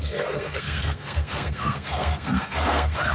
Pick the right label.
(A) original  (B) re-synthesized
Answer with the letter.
B